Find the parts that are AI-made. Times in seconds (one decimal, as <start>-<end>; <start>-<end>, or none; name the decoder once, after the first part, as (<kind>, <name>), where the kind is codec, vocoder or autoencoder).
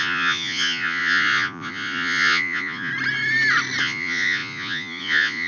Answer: 0.0-2.9 (vocoder, Vocos); 3.8-5.5